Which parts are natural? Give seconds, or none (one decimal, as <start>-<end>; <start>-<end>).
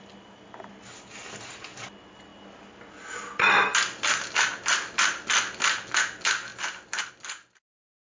0.0-8.1